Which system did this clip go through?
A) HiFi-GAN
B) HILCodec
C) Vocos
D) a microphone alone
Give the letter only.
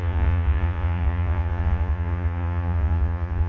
C